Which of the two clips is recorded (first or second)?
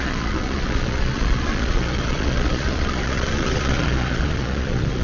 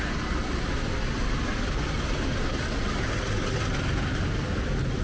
second